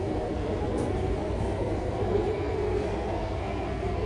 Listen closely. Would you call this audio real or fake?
fake